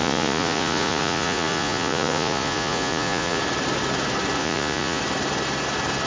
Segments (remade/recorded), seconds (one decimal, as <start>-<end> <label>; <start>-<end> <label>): 0.0-3.4 remade; 3.4-4.4 recorded; 4.4-5.0 remade; 5.0-6.1 recorded